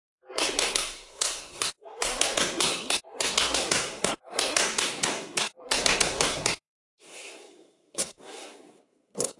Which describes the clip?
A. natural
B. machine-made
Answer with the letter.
B